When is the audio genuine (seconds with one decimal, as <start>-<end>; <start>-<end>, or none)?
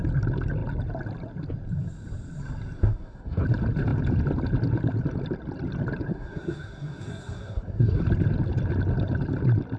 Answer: 0.0-2.8; 3.4-6.1; 8.0-9.8